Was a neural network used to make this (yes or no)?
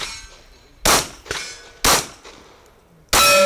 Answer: no